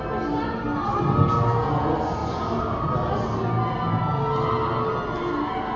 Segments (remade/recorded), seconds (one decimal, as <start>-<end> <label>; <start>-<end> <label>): 0.0-2.2 recorded; 2.2-2.9 remade; 2.9-5.8 recorded